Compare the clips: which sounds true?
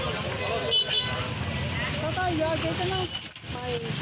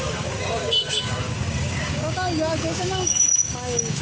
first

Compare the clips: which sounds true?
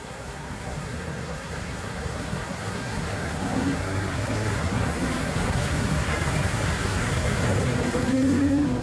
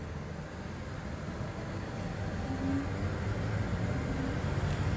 second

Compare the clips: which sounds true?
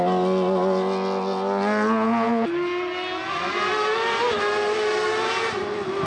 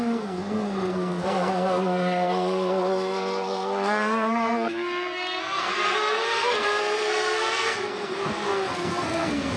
first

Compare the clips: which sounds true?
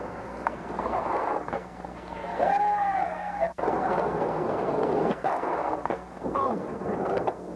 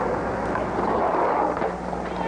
second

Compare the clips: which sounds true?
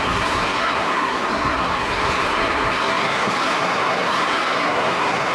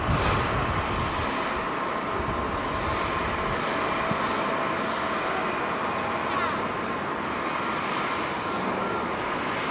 second